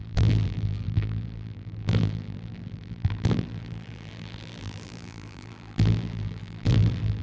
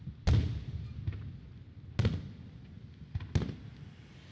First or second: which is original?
second